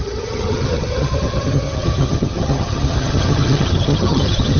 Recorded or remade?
remade